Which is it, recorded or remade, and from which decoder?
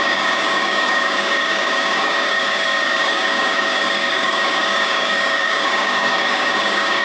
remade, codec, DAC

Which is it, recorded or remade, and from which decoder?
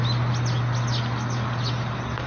recorded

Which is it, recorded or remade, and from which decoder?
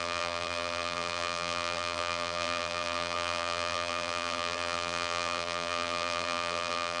remade, vocoder, BigVGAN v2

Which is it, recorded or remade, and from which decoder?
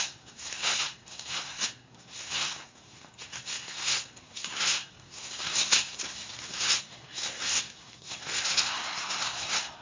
remade, codec, SNAC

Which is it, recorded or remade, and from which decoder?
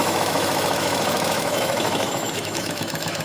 remade, autoencoder, DAC-VAE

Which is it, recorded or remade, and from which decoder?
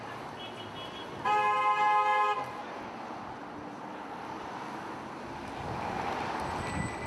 recorded